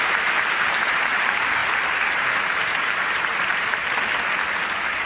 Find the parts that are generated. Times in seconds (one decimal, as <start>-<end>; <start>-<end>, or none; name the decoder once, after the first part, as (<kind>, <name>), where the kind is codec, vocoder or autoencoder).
0.0-1.6 (vocoder, BigVGAN v2); 2.2-3.8